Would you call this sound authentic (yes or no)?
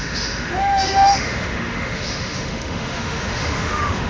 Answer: no